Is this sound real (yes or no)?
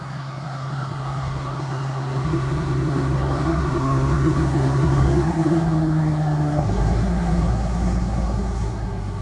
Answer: no